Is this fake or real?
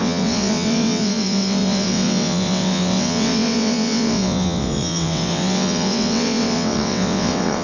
fake